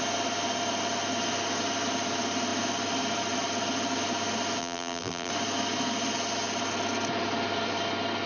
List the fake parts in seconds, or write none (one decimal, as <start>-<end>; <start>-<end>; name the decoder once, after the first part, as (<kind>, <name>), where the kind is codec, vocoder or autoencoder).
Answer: 4.6-5.3 (vocoder, BigVGAN v2)